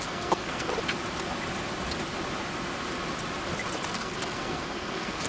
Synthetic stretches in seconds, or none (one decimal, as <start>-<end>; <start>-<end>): 0.0-0.7; 3.9-5.3